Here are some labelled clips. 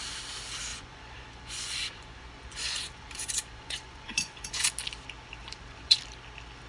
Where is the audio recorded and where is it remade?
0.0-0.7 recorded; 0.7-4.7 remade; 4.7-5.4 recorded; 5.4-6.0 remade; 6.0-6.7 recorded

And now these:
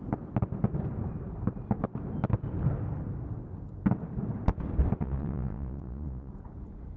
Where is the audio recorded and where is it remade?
0.0-5.0 recorded; 5.0-6.3 remade; 6.3-7.0 recorded

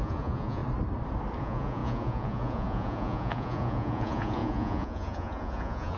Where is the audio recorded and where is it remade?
0.0-0.6 remade; 0.6-1.4 recorded; 1.4-6.0 remade

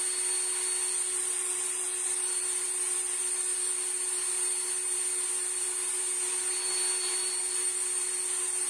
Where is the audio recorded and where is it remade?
0.0-8.7 recorded